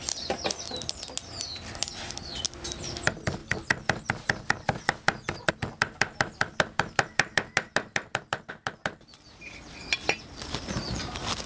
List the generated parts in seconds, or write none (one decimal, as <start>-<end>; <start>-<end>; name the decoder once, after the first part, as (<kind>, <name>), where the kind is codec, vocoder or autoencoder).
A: none